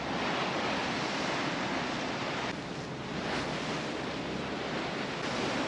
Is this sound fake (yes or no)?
no